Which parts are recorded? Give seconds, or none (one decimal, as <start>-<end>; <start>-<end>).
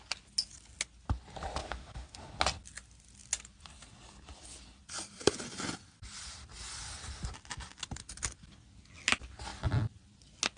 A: 0.0-1.6; 2.3-10.6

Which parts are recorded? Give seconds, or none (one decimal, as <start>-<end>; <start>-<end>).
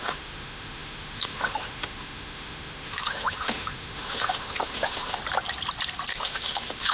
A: 5.2-6.1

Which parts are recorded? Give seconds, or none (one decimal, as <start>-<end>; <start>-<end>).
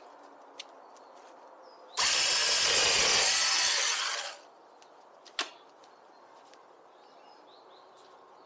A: 0.0-8.5